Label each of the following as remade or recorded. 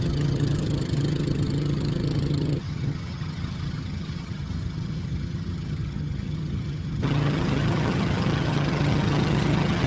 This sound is remade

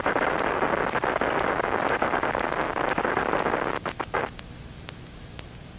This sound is recorded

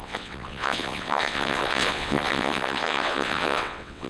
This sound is remade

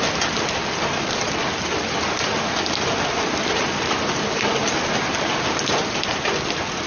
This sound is recorded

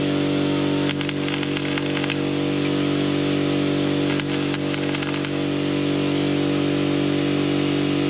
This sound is recorded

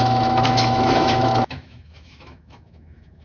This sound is remade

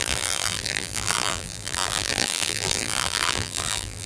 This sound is remade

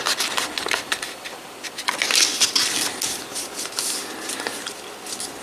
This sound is recorded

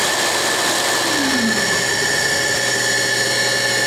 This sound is recorded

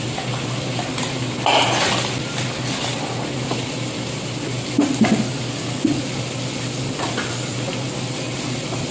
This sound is recorded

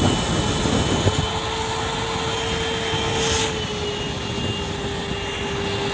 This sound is recorded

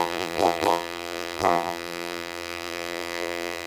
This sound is remade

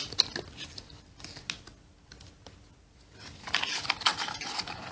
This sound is recorded